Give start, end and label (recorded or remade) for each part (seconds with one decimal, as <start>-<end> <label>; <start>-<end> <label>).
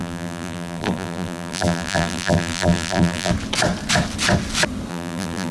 0.0-3.3 remade; 3.3-4.9 recorded; 4.9-5.5 remade